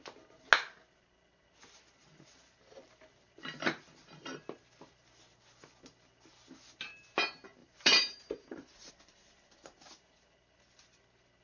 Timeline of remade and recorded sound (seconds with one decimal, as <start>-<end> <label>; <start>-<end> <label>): 0.0-7.6 recorded; 7.6-8.9 remade; 8.9-11.4 recorded